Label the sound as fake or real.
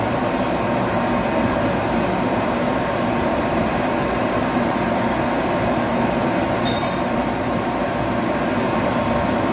fake